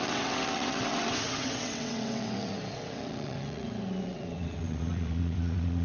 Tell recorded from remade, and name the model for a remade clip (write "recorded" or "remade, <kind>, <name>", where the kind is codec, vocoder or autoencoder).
remade, vocoder, WaveNeXt